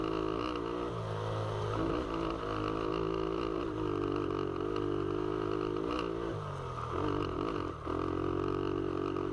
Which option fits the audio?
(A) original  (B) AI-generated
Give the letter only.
A